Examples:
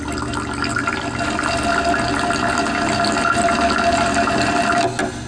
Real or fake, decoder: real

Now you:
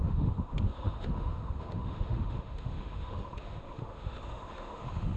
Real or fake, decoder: fake, autoencoder, DAC-VAE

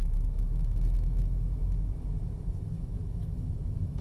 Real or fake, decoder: fake, autoencoder, DAC-VAE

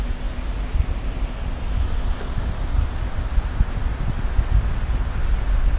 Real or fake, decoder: real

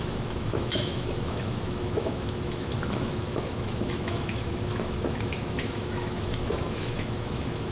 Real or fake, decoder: fake, autoencoder, DAC-VAE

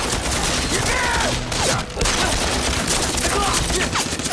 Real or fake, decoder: real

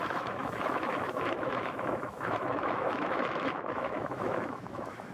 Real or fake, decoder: fake, autoencoder, DAC-VAE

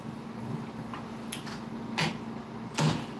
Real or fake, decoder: real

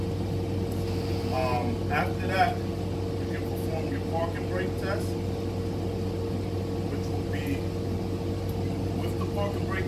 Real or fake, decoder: real